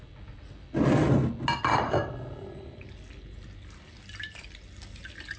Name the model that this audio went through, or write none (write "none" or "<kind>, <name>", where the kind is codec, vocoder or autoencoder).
none